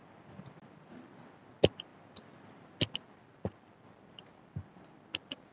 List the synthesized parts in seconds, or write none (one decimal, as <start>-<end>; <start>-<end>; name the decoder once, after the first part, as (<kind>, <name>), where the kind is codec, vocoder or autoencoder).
none